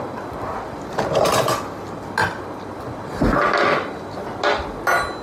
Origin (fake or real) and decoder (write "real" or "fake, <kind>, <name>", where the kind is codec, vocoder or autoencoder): real